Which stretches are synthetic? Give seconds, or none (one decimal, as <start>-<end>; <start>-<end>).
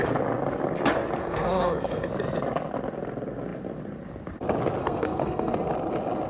1.2-2.1; 4.8-5.5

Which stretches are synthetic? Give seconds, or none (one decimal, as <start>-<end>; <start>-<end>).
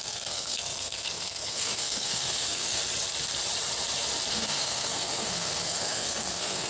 0.0-2.8; 4.3-6.7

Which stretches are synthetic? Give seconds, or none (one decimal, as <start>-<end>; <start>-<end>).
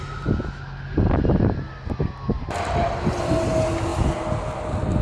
none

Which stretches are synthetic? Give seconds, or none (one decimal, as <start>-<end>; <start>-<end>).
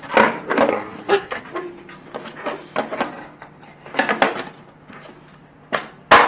0.7-1.4